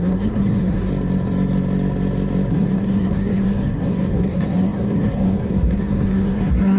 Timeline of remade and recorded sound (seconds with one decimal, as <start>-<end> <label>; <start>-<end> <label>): 0.0-0.9 remade; 0.9-2.5 recorded; 2.5-6.8 remade